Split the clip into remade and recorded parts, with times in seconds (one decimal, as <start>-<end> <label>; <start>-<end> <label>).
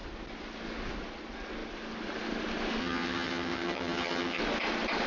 0.0-2.8 recorded; 2.8-4.4 remade; 4.4-5.1 recorded